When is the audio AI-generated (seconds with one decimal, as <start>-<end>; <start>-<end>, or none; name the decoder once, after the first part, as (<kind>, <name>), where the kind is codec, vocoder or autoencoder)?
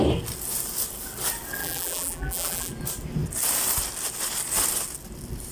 1.6-2.7 (vocoder, BigVGAN v2)